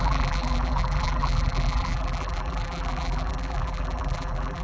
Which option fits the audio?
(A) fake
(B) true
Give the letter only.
A